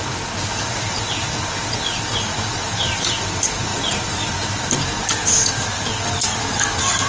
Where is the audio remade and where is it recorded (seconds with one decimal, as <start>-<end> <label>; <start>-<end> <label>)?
0.0-3.7 recorded; 3.7-4.3 remade; 4.3-7.1 recorded